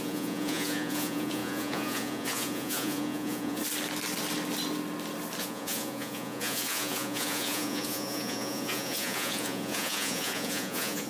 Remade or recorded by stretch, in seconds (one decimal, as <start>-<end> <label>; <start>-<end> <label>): 0.0-3.6 remade; 3.6-5.4 recorded; 5.4-11.1 remade